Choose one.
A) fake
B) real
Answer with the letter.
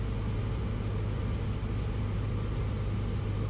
B